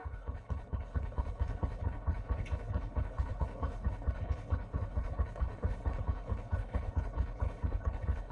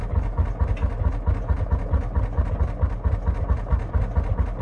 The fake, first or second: first